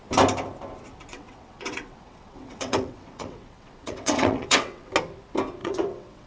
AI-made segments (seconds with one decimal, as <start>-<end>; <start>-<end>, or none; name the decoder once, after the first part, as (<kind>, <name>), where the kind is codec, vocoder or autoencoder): 1.1-4.9 (vocoder, WaveNeXt); 5.6-6.3